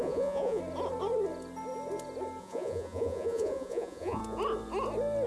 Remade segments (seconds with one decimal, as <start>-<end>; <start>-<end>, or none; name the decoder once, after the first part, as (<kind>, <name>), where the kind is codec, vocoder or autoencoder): 0.0-0.6 (vocoder, Vocos); 2.4-4.2